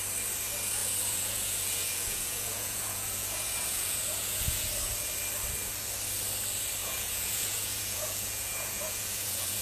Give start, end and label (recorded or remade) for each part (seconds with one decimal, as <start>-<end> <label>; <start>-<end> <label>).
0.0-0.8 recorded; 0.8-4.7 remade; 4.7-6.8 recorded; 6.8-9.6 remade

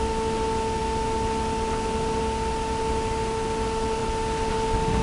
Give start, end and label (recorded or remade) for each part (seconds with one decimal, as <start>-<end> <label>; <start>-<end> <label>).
0.0-5.0 recorded

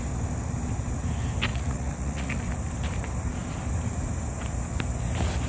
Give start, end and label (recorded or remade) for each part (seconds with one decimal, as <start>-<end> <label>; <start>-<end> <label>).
0.0-1.5 recorded; 1.5-2.4 remade; 2.4-5.5 recorded